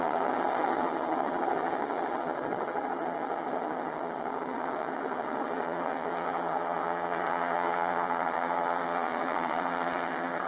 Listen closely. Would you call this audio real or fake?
fake